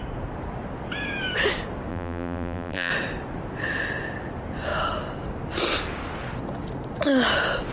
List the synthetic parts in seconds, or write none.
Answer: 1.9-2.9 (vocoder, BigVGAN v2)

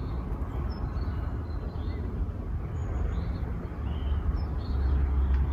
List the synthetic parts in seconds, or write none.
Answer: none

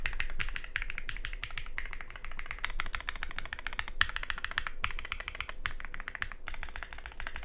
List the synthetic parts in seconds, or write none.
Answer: none

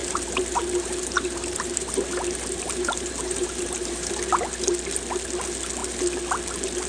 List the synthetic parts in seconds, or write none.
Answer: 0.0-4.1 (vocoder, BigVGAN v2)